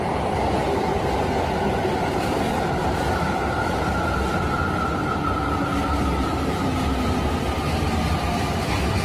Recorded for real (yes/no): yes